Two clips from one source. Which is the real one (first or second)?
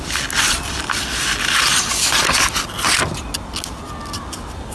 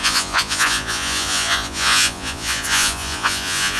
first